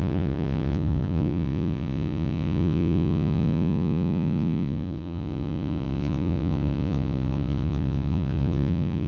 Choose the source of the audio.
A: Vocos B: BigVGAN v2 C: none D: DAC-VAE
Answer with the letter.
A